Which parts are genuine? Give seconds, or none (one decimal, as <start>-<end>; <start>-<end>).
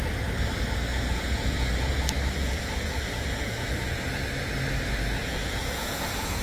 0.0-0.9; 1.9-2.4; 4.0-5.2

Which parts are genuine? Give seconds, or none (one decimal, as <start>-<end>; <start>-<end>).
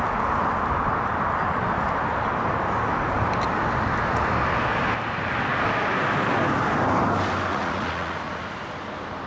0.0-7.5; 8.4-9.3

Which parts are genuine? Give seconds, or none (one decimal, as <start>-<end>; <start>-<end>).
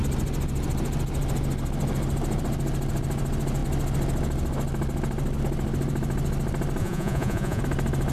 0.0-6.8; 7.6-8.1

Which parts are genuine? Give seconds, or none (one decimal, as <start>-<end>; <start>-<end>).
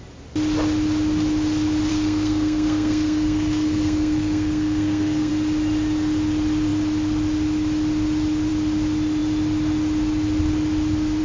0.0-1.9; 5.3-11.2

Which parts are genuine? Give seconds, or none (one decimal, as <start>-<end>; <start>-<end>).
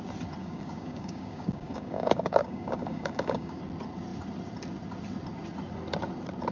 0.0-0.4; 3.6-6.5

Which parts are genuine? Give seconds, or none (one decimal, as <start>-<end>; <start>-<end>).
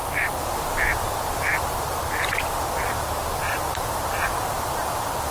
0.0-5.3